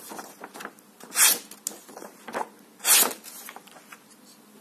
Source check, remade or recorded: recorded